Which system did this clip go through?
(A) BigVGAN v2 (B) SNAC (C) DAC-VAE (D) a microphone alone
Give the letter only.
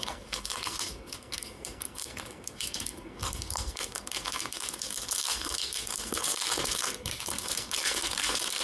B